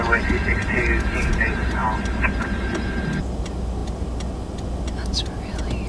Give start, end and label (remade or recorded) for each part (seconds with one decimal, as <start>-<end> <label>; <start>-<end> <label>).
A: 0.0-5.9 recorded